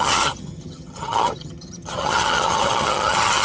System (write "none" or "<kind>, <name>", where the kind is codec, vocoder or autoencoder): vocoder, HiFi-GAN